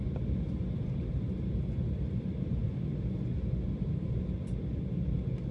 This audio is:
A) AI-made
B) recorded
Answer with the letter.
B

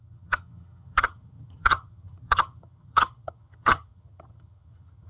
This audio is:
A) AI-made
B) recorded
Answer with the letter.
A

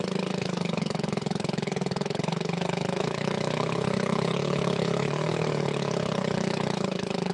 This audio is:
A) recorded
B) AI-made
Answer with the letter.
B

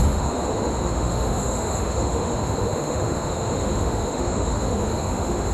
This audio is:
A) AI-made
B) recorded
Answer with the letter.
A